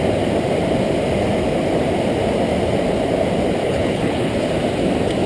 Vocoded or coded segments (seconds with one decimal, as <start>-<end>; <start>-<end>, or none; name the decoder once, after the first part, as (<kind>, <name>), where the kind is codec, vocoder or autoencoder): 3.6-4.3 (codec, HILCodec)